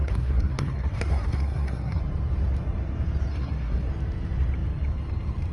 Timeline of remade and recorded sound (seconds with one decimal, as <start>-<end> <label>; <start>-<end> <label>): 0.0-2.0 remade; 2.0-3.3 recorded; 3.3-3.9 remade; 3.9-5.5 recorded